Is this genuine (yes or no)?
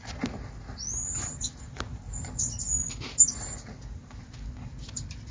yes